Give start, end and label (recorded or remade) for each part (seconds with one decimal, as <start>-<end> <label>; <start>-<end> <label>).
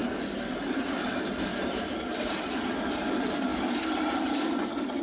0.0-5.0 recorded